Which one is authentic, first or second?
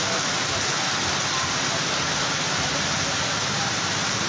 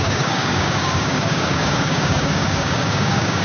first